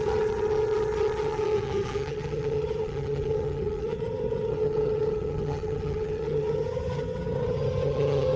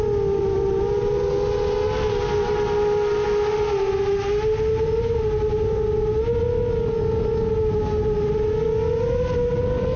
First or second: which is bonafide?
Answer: second